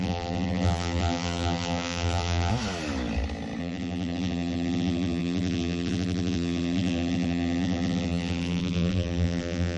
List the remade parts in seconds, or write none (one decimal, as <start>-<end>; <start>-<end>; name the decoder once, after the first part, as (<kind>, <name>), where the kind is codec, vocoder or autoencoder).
0.0-2.5 (vocoder, BigVGAN v2); 3.6-9.8